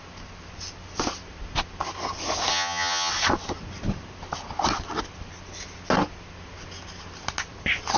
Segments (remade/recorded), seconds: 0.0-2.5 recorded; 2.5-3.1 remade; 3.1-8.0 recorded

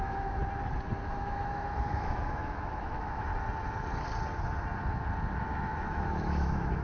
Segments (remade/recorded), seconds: 0.0-0.4 remade; 0.4-1.1 recorded; 1.1-3.3 remade; 3.3-5.4 recorded; 5.4-6.8 remade

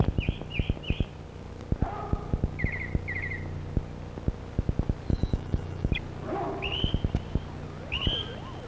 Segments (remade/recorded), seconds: 0.0-5.1 recorded; 5.1-5.9 remade; 5.9-8.7 recorded